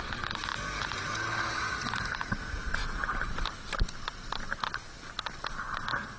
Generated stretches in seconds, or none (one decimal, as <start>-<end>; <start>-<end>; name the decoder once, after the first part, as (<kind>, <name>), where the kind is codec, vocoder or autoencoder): none